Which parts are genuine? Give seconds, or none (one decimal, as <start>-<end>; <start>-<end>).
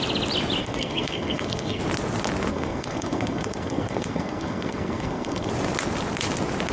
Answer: 0.0-0.6; 1.8-2.5; 5.5-6.7